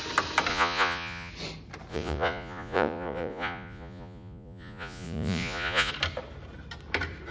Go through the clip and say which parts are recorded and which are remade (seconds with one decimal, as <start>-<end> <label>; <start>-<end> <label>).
0.0-0.5 recorded; 0.5-1.3 remade; 1.3-1.9 recorded; 1.9-5.9 remade; 5.9-7.3 recorded